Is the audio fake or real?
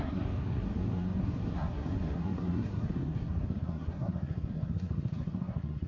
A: fake